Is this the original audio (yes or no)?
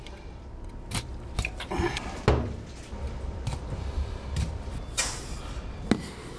yes